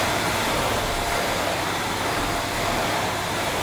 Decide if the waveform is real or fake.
fake